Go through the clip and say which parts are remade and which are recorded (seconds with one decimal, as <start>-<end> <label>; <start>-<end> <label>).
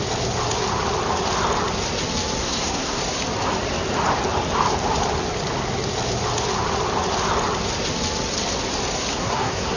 0.0-2.4 recorded; 2.4-3.0 remade; 3.0-9.1 recorded; 9.1-9.8 remade